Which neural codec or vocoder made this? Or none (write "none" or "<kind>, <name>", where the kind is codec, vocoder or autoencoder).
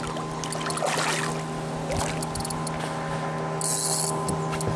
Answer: none